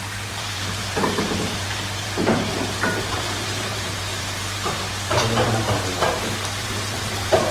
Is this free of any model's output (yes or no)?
no